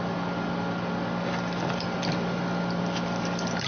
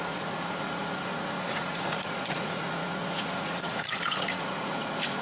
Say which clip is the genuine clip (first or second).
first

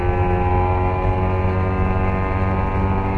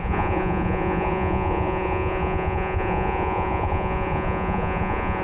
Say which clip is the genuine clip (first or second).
first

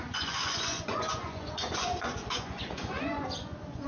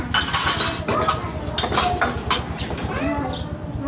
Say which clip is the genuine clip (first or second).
second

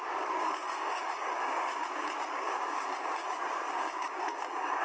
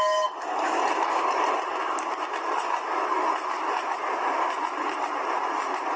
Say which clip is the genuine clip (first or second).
second